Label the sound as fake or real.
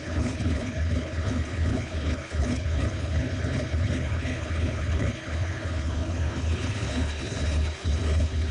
fake